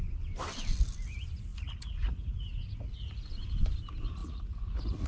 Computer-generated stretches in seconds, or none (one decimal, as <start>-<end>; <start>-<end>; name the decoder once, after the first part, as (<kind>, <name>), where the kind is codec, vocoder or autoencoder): 1.5-3.6 (vocoder, Vocos); 4.2-5.1